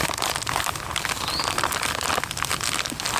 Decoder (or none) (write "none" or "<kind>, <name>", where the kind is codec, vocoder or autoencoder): none